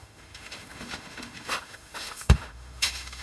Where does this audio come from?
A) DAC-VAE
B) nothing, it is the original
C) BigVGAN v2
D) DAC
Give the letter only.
A